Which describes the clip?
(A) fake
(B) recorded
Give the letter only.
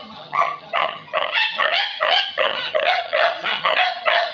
A